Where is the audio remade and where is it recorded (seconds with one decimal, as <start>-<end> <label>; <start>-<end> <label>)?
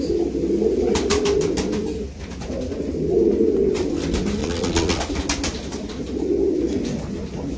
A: 0.0-4.4 recorded; 4.4-5.0 remade; 5.0-7.6 recorded